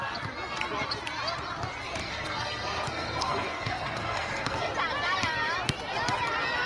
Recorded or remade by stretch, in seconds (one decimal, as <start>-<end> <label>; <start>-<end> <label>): 0.0-2.0 recorded; 2.0-4.7 remade; 4.7-6.7 recorded